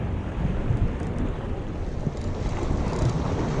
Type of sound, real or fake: real